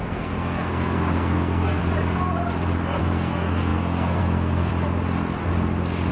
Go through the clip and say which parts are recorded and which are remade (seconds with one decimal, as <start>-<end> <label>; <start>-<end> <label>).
0.0-1.8 remade; 1.8-3.0 recorded; 3.0-4.7 remade; 4.7-6.1 recorded

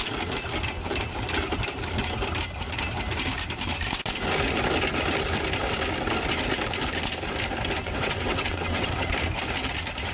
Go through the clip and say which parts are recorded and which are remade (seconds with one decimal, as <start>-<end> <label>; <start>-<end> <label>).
0.0-7.8 recorded; 7.8-9.1 remade; 9.1-10.1 recorded

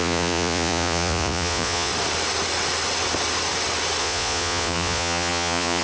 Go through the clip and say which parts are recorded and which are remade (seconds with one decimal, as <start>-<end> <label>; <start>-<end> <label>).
0.0-1.9 remade; 1.9-4.0 recorded; 4.0-5.8 remade

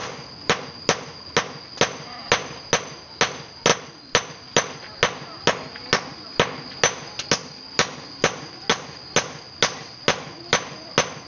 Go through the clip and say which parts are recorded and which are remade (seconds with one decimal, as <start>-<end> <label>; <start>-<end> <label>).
0.0-11.3 recorded

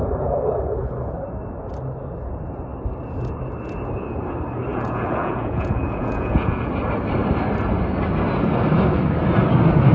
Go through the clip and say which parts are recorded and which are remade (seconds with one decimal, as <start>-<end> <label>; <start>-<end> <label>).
0.0-4.7 recorded; 4.7-6.7 remade; 6.7-9.9 recorded

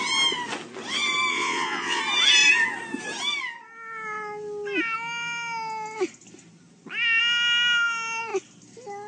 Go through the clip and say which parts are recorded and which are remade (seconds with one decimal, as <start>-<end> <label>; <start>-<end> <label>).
0.0-1.3 recorded; 1.3-2.0 remade; 2.0-9.1 recorded

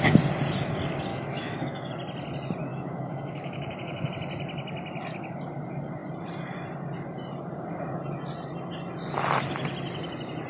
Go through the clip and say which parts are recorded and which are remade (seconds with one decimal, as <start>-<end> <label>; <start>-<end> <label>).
0.0-1.1 recorded; 1.1-1.9 remade; 1.9-2.7 recorded; 2.7-4.1 remade; 4.1-10.5 recorded

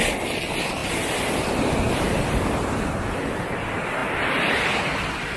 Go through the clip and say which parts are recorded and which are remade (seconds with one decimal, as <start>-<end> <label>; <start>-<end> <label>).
0.0-5.4 recorded